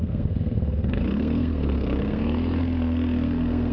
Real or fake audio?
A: fake